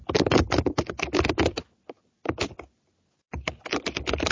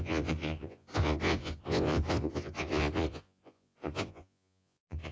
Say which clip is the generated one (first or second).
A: second